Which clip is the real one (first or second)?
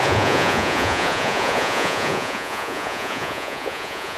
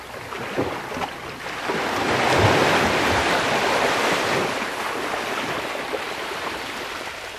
second